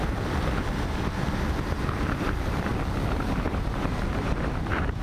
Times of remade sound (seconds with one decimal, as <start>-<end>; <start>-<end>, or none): 0.0-2.7; 3.3-5.0